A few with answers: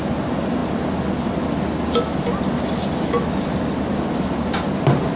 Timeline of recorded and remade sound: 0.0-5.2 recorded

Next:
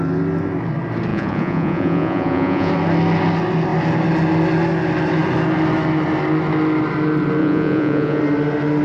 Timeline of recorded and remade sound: 0.0-1.1 recorded; 1.1-2.7 remade; 2.7-7.4 recorded; 7.4-8.2 remade; 8.2-8.8 recorded

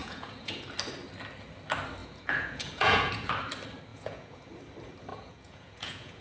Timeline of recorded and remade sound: 0.0-0.6 remade; 0.6-2.0 recorded; 2.0-3.3 remade; 3.3-3.9 recorded; 3.9-4.5 remade; 4.5-5.1 recorded; 5.1-6.2 remade

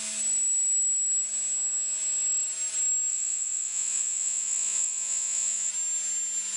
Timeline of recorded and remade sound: 0.0-3.1 recorded; 3.1-5.7 remade; 5.7-6.6 recorded

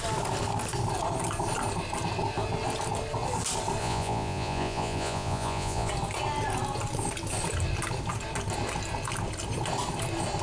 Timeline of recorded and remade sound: 0.0-3.8 recorded; 3.8-5.9 remade; 5.9-10.4 recorded

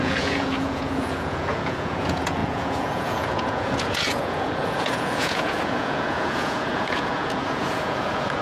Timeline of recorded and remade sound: 0.0-8.4 remade

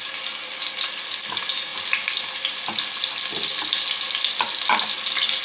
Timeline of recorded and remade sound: 0.0-5.4 recorded

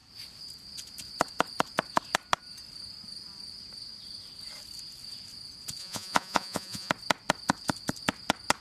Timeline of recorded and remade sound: 0.0-5.8 recorded; 5.8-6.9 remade; 6.9-8.6 recorded